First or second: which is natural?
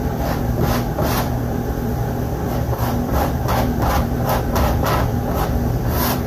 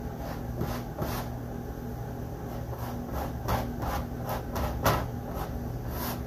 second